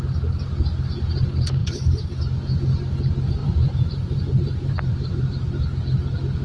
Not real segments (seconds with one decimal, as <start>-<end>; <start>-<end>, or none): 1.6-2.2; 3.4-5.8